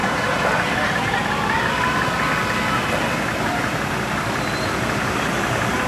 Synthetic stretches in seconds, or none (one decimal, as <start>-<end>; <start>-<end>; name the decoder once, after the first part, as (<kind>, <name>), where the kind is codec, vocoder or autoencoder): none